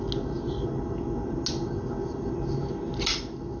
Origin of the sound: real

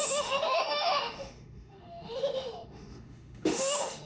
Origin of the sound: fake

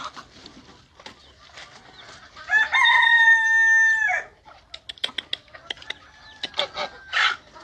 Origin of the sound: real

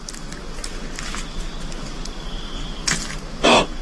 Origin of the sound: real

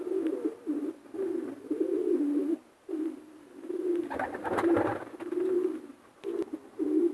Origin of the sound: real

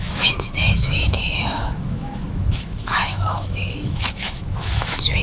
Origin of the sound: fake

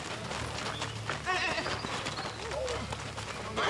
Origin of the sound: real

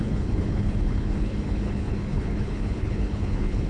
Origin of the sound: fake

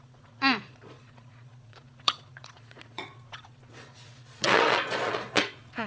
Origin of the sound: fake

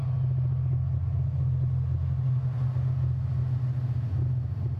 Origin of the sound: real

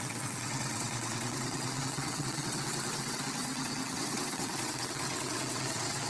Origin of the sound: fake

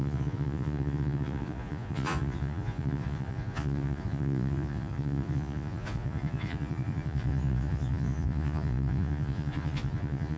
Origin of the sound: fake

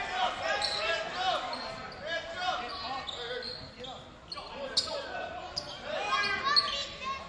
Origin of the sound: real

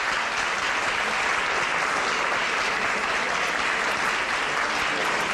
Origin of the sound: real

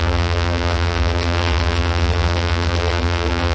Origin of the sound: fake